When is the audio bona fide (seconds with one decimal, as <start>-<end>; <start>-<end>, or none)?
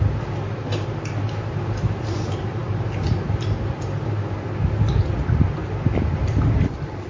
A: 0.0-7.1